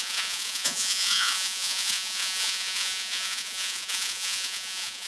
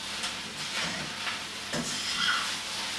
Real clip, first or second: second